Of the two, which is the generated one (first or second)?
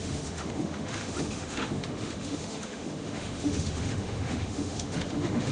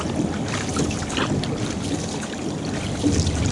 first